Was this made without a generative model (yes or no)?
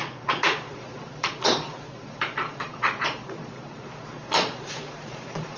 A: no